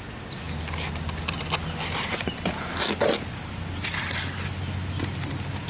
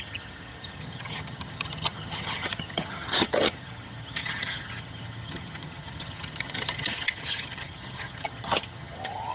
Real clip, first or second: first